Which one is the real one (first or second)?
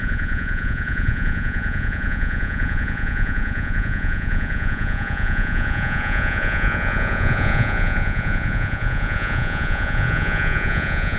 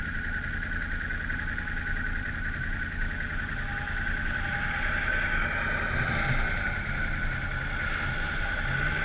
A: second